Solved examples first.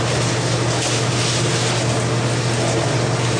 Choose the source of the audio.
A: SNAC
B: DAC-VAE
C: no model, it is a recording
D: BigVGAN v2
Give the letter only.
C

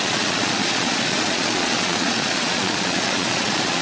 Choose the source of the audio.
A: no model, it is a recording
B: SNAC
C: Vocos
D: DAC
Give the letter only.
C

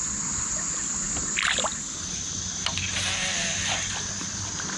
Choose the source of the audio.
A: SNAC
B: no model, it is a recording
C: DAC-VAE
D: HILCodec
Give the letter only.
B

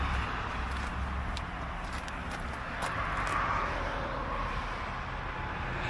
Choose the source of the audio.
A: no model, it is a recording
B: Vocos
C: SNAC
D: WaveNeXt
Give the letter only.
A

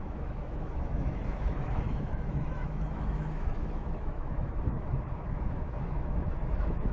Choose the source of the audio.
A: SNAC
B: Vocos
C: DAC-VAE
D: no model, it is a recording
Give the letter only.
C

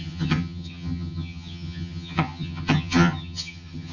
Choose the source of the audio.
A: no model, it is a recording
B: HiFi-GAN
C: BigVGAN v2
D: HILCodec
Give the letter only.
B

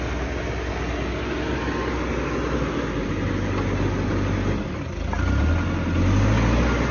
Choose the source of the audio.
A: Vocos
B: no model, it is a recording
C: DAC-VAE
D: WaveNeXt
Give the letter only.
B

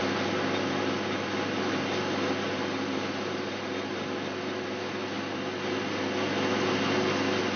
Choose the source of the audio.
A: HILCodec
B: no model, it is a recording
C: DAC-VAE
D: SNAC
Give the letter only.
B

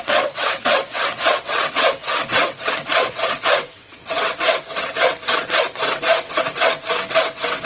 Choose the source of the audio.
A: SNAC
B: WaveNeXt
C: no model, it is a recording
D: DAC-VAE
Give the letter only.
B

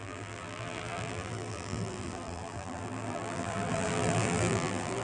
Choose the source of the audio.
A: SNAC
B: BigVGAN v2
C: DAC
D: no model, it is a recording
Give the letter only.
B